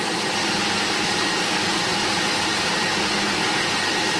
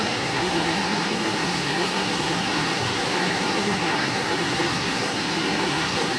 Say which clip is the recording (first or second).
first